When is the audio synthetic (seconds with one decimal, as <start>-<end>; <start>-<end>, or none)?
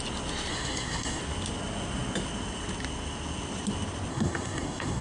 0.5-1.2; 4.1-5.0